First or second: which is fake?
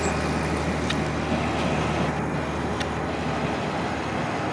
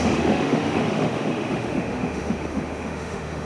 second